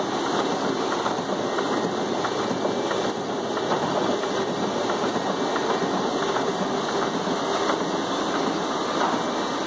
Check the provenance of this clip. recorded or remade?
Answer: recorded